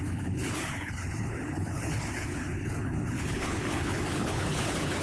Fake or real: fake